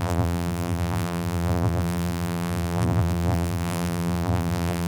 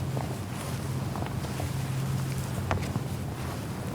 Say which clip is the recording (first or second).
second